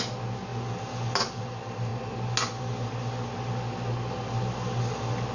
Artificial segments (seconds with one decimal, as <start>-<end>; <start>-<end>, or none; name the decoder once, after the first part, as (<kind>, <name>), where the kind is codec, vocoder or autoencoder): none